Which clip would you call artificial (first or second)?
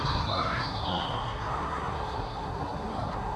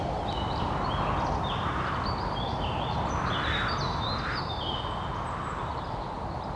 first